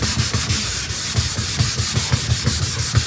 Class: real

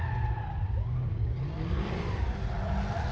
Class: real